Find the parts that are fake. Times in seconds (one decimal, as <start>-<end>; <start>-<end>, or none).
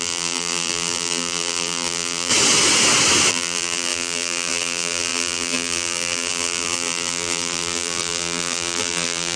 0.0-2.3; 3.3-9.4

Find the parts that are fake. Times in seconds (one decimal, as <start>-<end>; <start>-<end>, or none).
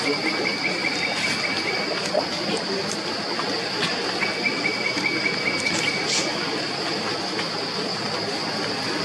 none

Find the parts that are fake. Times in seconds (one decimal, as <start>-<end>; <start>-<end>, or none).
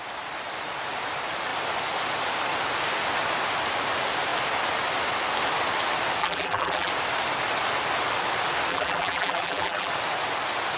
6.2-6.9; 8.7-9.9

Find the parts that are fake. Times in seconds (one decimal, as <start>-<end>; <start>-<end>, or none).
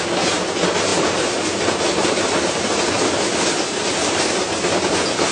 0.9-4.1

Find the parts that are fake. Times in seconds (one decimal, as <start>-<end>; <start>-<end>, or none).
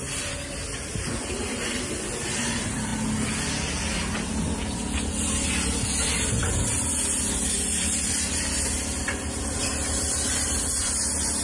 0.0-2.9; 6.9-11.4